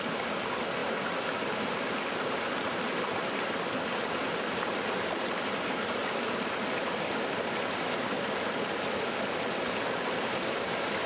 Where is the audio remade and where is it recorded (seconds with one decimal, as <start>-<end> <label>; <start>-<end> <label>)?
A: 0.0-11.1 recorded